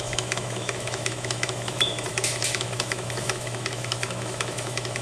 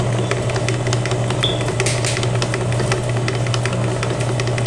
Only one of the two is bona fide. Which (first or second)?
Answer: second